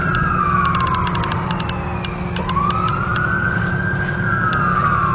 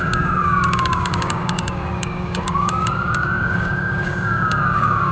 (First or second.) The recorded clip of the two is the first